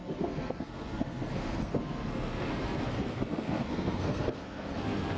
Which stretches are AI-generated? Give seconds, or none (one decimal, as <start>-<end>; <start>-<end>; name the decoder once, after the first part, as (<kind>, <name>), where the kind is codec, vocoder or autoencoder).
0.0-5.2 (codec, SNAC)